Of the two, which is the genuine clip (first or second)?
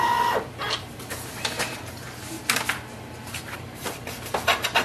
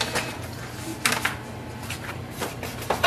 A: second